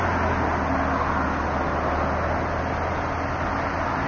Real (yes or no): yes